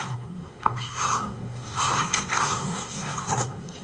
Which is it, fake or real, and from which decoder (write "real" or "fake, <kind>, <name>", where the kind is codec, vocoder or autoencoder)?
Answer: fake, codec, SNAC